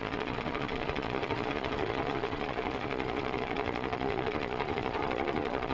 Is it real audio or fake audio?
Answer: fake